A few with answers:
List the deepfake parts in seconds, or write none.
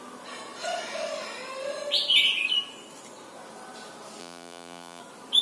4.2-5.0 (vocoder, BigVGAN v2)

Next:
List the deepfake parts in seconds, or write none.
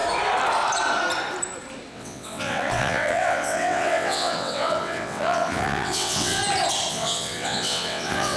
1.9-6.4 (vocoder, WaveNeXt); 6.9-8.4